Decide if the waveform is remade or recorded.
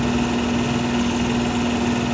recorded